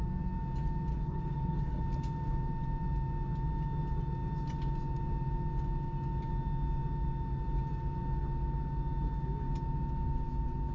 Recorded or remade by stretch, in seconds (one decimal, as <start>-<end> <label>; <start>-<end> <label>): 0.0-0.9 recorded; 0.9-1.8 remade; 1.8-10.7 recorded